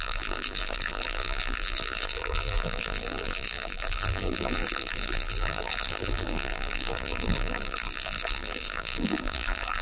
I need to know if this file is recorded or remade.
remade